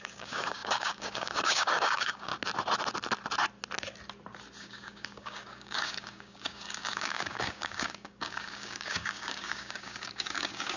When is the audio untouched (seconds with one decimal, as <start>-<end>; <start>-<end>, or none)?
2.3-4.6

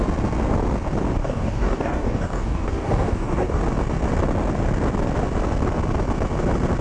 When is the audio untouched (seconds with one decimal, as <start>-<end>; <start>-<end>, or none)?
0.0-1.2; 3.6-6.8

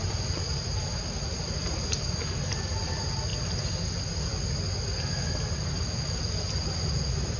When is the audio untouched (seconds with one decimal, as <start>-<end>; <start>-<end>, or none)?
0.0-7.4

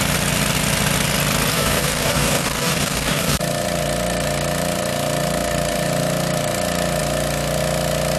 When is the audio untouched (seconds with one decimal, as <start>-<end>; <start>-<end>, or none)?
0.0-1.5; 3.4-8.2

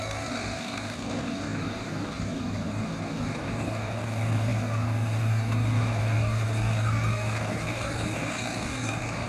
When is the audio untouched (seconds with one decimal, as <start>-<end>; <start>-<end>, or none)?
none

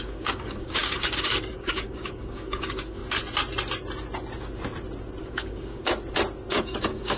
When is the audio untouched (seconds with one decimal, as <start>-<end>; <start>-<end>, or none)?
3.0-5.2; 5.8-6.5